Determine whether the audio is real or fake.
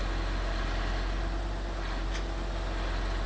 real